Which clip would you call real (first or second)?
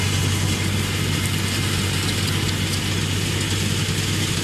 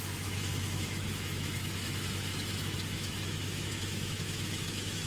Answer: first